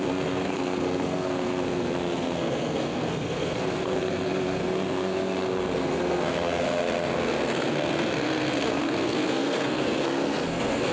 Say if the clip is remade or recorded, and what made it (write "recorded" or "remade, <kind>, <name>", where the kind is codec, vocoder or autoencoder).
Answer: remade, codec, SNAC